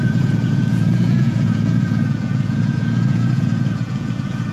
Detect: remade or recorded remade